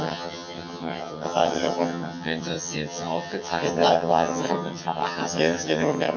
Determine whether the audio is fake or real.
fake